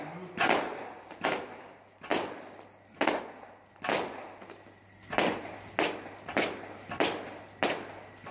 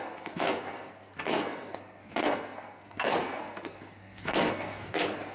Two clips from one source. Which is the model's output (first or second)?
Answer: second